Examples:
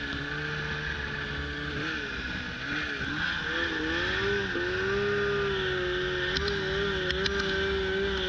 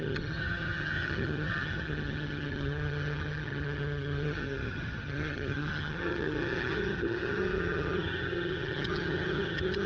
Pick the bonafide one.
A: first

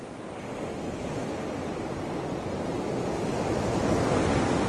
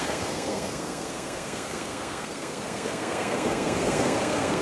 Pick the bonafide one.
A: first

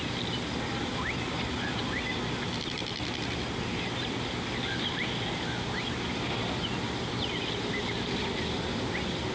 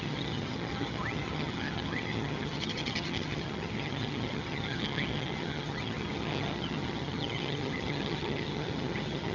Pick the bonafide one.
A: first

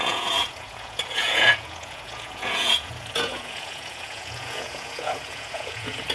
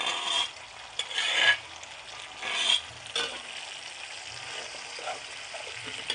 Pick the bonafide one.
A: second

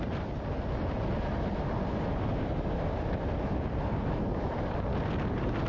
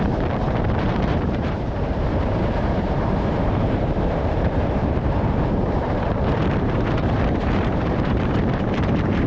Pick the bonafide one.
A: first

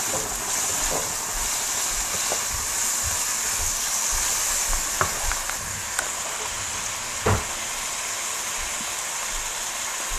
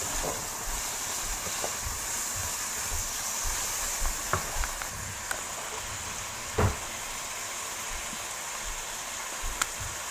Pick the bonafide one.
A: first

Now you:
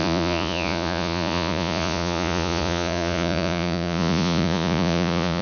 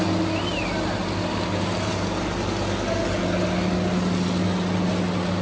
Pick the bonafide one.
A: second